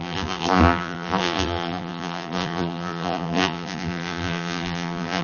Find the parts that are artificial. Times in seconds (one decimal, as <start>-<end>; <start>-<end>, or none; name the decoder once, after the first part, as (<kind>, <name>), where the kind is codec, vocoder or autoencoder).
0.0-5.2 (vocoder, BigVGAN v2)